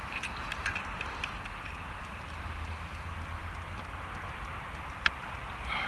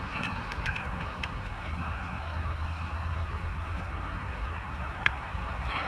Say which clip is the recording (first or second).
first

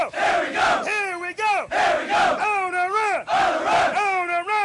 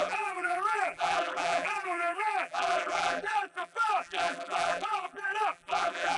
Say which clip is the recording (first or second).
first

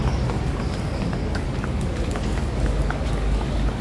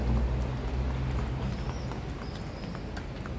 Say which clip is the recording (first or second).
second